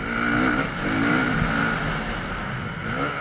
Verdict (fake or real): real